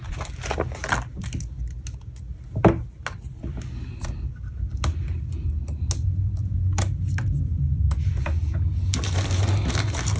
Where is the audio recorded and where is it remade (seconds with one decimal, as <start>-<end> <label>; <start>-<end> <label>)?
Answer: 0.0-10.2 recorded